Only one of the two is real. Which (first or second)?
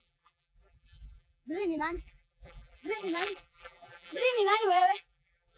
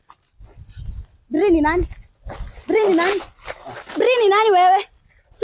second